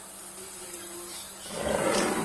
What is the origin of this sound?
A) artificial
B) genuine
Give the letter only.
B